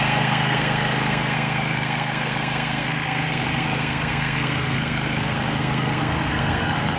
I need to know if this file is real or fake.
fake